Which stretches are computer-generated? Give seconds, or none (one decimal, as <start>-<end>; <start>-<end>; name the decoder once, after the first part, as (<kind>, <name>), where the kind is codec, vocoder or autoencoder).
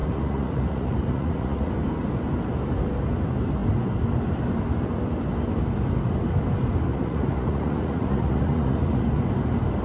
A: 0.0-1.7 (vocoder, Vocos); 6.9-9.1